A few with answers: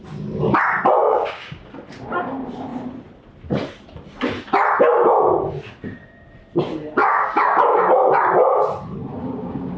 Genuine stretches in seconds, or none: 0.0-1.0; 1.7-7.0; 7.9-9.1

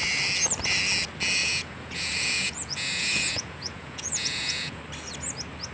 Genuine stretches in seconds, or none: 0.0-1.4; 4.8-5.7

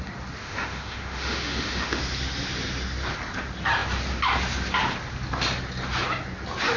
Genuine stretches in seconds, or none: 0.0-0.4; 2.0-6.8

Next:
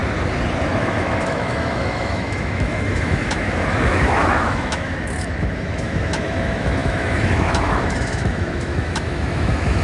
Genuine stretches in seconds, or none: 0.0-0.8

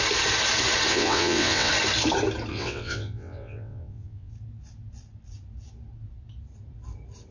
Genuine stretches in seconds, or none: 0.0-0.9; 1.7-2.5; 4.3-7.3